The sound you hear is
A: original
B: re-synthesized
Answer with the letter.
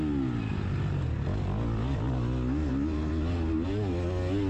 A